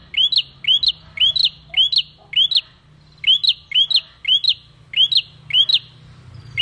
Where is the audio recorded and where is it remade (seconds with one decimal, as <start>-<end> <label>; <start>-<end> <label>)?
0.0-6.6 recorded

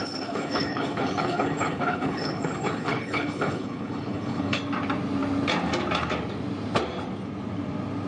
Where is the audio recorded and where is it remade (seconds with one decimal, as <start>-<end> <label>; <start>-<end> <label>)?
0.0-4.6 remade; 4.6-8.1 recorded

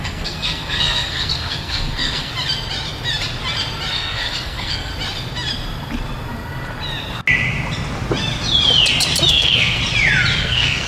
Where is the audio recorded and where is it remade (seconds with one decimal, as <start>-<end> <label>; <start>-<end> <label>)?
0.0-2.3 remade; 2.3-3.9 recorded; 3.9-4.9 remade; 4.9-9.3 recorded; 9.3-9.8 remade; 9.8-10.4 recorded; 10.4-10.9 remade

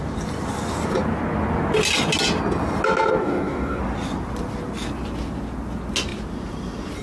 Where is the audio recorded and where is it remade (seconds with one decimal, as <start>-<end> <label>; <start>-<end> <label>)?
0.0-3.2 recorded; 3.2-3.8 remade; 3.8-7.0 recorded

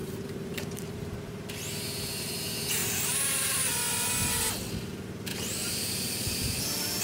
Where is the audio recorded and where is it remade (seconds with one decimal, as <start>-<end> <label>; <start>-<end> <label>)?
0.0-1.0 remade; 1.0-2.8 recorded; 2.8-3.6 remade; 3.6-5.3 recorded; 5.3-6.6 remade; 6.6-7.0 recorded

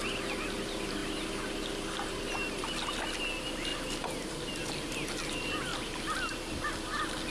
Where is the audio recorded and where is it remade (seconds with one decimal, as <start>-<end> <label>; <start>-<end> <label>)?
0.0-7.3 recorded

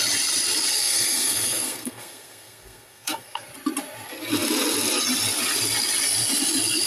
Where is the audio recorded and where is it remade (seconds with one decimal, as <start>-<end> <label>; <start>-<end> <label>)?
0.0-0.7 recorded; 0.7-3.5 remade; 3.5-6.9 recorded

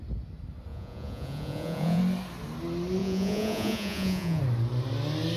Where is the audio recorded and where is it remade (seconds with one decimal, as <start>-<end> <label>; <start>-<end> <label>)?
0.0-0.7 recorded; 0.7-2.0 remade; 2.0-3.0 recorded; 3.0-4.4 remade; 4.4-5.4 recorded